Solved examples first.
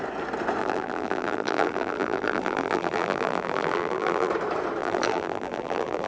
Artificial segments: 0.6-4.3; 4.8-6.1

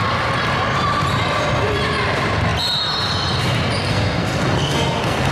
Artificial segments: 3.8-5.3

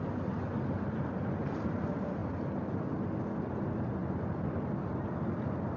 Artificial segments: none

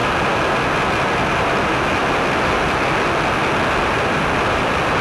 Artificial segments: none

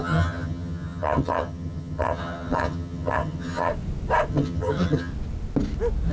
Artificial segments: 0.0-3.7; 4.3-5.1

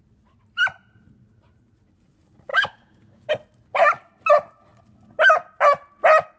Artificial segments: 2.5-3.3

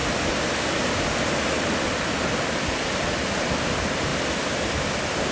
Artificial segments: none

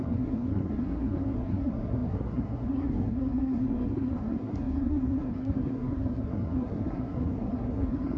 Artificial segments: 0.0-8.2